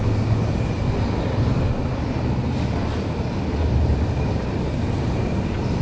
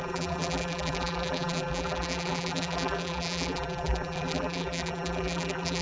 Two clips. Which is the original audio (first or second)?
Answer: first